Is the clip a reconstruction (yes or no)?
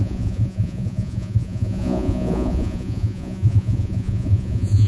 yes